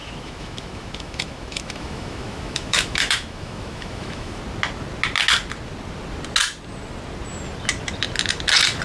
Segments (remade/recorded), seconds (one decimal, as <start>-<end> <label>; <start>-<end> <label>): 0.0-4.4 remade; 4.4-8.8 recorded